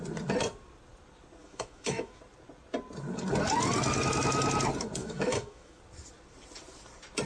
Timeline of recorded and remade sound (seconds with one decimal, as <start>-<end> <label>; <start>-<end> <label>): 0.0-1.4 recorded; 1.4-2.2 remade; 2.2-5.0 recorded; 5.0-5.8 remade; 5.8-7.3 recorded

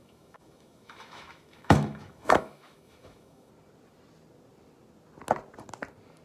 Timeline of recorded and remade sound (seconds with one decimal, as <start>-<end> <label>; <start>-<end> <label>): 0.0-3.5 remade; 3.5-6.2 recorded

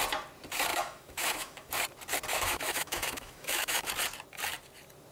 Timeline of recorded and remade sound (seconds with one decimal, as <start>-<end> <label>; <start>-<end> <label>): 0.0-0.7 recorded; 0.7-1.7 remade; 1.7-2.3 recorded; 2.3-3.9 remade; 3.9-5.1 recorded

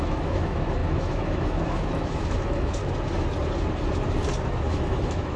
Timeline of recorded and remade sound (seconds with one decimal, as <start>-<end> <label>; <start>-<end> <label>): 0.0-2.8 remade; 2.8-4.6 recorded; 4.6-5.4 remade

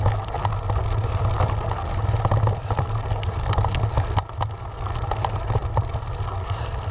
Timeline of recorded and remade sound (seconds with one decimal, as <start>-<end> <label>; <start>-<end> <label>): 0.0-6.9 recorded

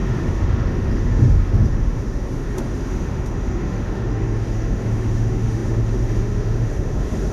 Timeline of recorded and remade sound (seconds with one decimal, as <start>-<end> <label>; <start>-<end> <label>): 0.0-7.3 remade